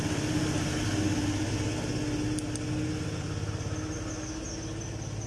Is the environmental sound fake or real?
real